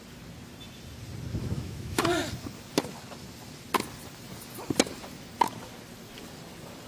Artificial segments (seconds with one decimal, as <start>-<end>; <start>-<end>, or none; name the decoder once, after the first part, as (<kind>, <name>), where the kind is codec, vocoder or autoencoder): 1.4-2.0 (autoencoder, DAC-VAE)